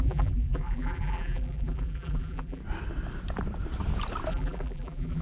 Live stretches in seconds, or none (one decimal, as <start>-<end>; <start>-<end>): 2.6-4.3